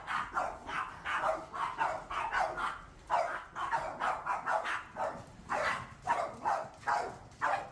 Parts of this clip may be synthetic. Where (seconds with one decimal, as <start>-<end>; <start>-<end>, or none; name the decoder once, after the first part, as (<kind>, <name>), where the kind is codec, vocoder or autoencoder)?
none